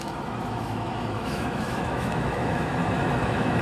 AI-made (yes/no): yes